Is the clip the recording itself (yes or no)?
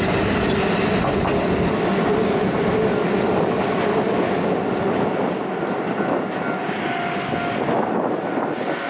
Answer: yes